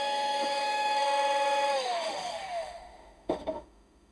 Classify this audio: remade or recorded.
remade